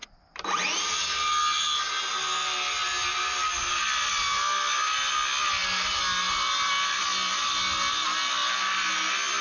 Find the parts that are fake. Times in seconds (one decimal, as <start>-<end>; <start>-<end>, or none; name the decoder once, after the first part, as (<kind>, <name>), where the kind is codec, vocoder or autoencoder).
none